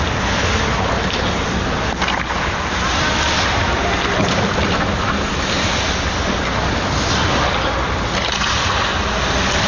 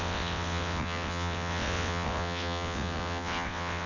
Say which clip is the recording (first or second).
first